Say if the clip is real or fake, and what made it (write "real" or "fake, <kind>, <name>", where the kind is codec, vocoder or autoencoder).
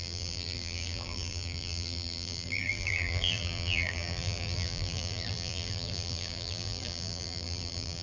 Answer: fake, vocoder, BigVGAN v2